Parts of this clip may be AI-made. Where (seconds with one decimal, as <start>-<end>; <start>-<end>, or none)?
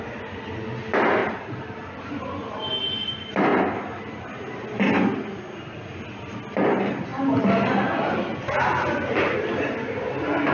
1.2-2.0; 3.5-4.3